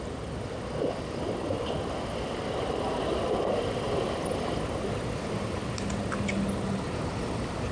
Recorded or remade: recorded